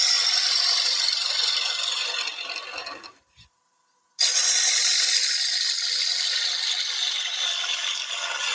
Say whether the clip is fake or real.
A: real